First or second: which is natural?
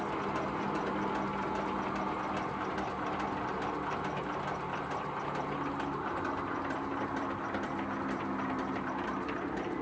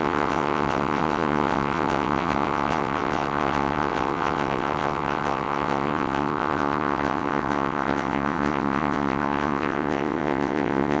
first